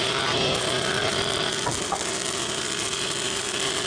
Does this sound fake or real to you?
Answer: real